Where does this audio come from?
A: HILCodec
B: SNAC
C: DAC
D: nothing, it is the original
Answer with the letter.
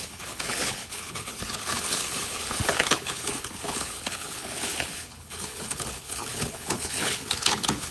A